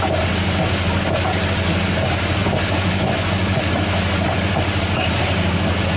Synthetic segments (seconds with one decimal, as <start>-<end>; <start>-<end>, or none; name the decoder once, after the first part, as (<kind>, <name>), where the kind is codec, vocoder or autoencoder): 2.4-3.6 (vocoder, Vocos)